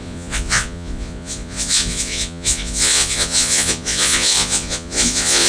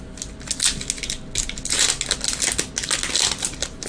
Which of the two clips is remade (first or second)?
first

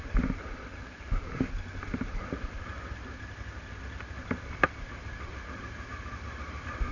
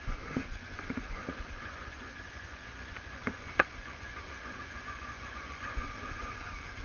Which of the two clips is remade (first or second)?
second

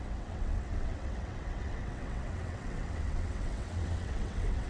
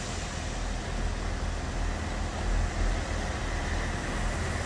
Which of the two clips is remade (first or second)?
first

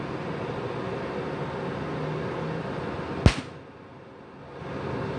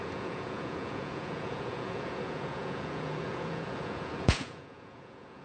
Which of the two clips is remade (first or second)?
second